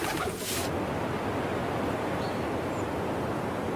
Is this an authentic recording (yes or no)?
yes